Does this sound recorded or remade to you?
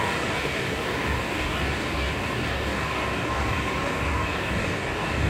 remade